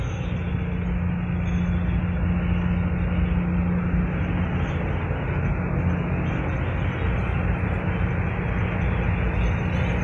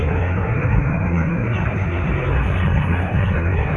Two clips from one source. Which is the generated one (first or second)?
second